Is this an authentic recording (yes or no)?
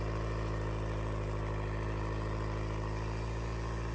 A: yes